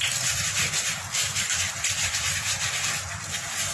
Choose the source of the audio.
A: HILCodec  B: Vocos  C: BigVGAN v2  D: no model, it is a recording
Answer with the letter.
D